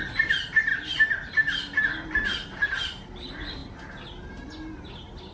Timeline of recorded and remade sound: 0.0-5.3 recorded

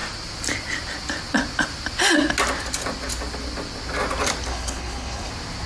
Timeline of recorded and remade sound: 0.0-4.5 recorded; 4.5-5.3 remade; 5.3-5.7 recorded

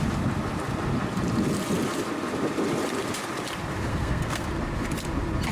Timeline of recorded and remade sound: 0.0-3.9 recorded; 3.9-4.5 remade; 4.5-5.5 recorded

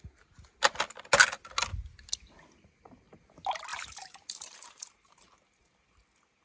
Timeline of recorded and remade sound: 0.0-3.7 recorded; 3.7-5.3 remade; 5.3-6.4 recorded